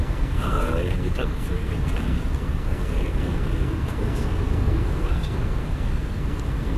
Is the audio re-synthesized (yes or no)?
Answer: yes